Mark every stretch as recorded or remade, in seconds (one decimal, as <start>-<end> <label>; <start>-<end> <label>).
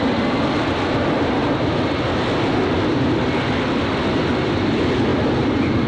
0.0-5.9 recorded